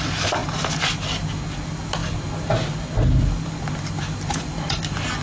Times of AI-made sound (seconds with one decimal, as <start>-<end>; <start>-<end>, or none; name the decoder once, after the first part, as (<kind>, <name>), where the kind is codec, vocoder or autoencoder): none